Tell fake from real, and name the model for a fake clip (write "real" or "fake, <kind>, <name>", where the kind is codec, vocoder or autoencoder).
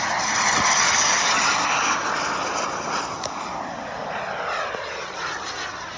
real